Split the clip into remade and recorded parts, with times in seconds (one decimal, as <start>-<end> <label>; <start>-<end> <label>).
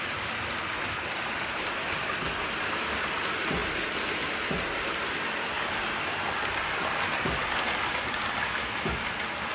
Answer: 0.0-9.5 recorded